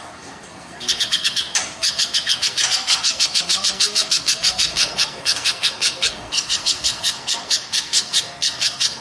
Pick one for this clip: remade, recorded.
remade